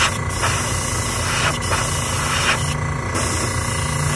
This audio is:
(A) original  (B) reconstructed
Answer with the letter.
A